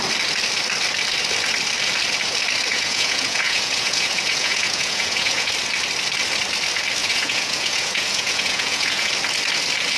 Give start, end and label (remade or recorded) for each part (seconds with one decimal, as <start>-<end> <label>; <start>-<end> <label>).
0.0-2.7 recorded; 2.7-5.5 remade; 5.5-7.0 recorded; 7.0-9.1 remade; 9.1-10.0 recorded